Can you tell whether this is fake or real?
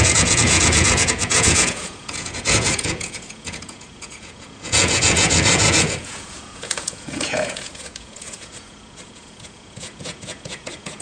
fake